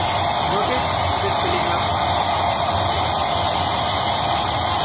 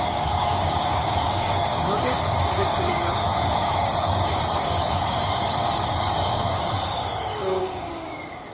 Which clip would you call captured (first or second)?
first